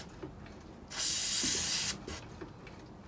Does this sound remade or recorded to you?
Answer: recorded